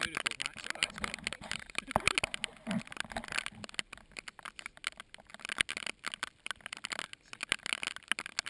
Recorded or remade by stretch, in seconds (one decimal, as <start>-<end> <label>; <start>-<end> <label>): 0.0-8.5 recorded